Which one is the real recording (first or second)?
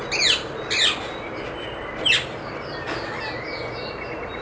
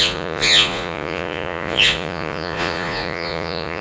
first